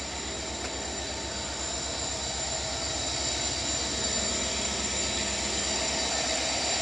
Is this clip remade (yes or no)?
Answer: no